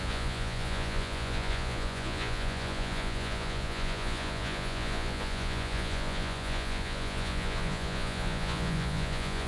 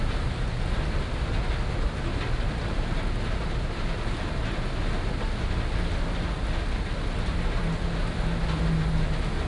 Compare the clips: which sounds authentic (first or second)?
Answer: second